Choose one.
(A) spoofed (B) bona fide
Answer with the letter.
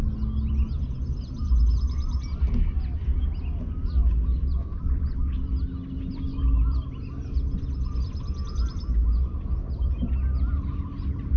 B